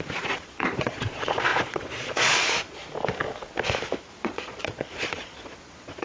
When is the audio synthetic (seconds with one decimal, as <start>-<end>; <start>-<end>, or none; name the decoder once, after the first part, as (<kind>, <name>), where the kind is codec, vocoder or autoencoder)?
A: 0.0-2.8 (vocoder, Vocos); 4.0-6.0